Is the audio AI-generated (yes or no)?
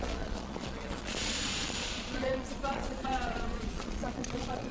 yes